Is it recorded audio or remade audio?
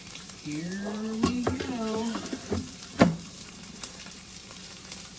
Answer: remade